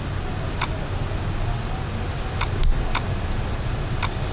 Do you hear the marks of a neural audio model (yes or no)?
no